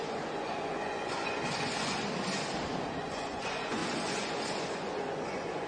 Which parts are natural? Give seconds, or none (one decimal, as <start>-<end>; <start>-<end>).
2.0-3.0

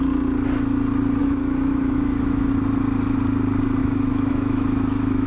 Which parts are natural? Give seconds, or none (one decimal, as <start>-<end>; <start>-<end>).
0.0-1.2; 2.5-3.8

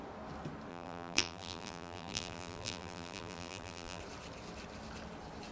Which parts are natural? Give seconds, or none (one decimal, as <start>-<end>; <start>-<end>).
0.0-0.7; 4.0-5.5

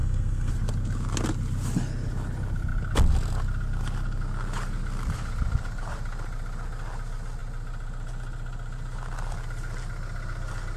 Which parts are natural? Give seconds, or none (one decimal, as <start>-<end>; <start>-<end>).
0.5-10.8

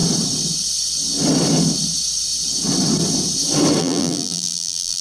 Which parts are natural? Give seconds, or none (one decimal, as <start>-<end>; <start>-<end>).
0.0-3.8

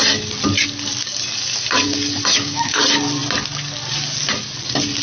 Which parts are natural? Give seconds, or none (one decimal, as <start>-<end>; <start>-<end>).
0.0-2.3; 2.8-5.0

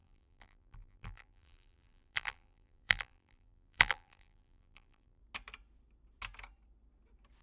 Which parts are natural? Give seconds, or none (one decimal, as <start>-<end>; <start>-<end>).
5.2-7.4

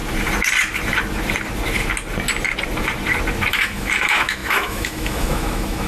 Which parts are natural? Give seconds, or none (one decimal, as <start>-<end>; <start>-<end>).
0.0-3.5